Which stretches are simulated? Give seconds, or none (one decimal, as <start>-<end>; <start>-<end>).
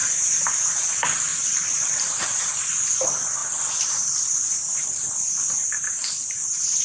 0.0-0.5; 1.3-2.5; 3.4-6.8